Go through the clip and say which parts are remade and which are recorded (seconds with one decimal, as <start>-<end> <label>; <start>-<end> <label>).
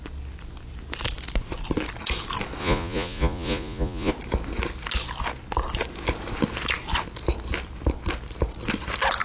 0.0-2.6 recorded; 2.6-4.1 remade; 4.1-9.2 recorded